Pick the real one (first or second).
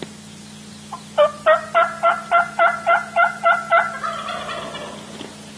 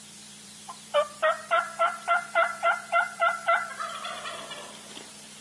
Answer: first